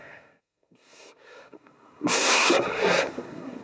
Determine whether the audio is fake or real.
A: fake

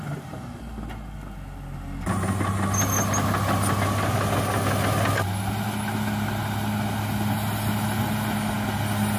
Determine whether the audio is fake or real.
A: real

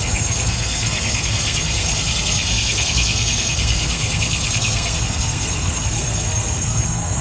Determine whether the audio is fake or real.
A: fake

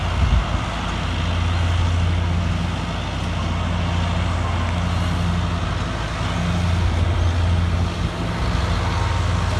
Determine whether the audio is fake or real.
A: real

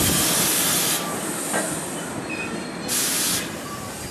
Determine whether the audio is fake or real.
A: real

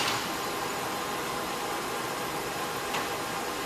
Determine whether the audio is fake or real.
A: real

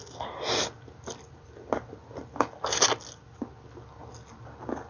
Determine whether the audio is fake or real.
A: real